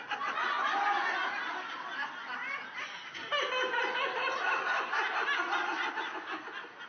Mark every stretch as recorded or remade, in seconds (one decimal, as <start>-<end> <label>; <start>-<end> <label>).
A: 0.0-6.9 recorded